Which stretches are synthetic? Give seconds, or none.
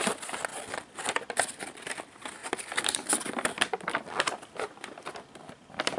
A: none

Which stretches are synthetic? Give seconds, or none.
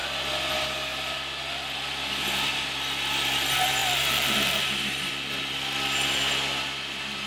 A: 3.8-5.1 (vocoder, BigVGAN v2)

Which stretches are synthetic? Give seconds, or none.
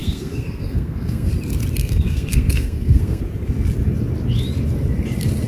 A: 0.0-1.3 (codec, SNAC); 1.8-3.2